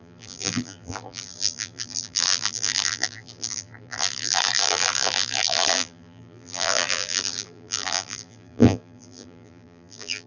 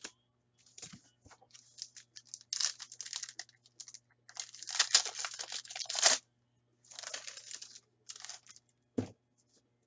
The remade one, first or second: first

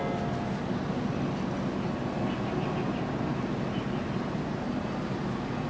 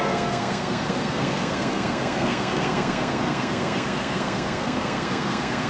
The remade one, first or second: second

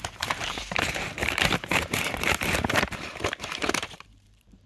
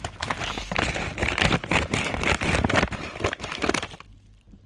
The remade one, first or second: first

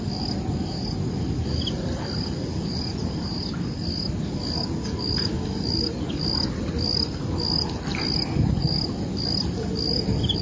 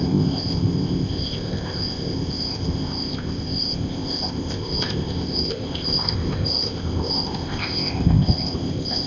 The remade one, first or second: second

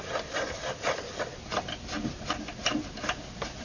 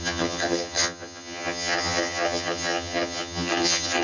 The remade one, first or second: second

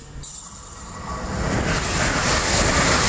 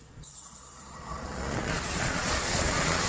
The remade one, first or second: second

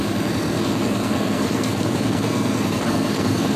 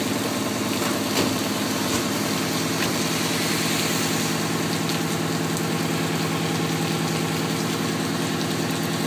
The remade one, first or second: first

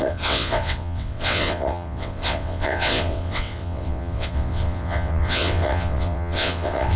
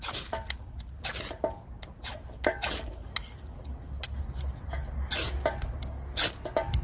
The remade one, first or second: first